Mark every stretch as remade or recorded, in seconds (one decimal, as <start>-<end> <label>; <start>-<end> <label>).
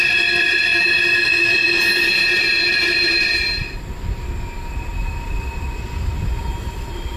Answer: 0.0-3.6 remade; 3.6-6.4 recorded; 6.4-7.2 remade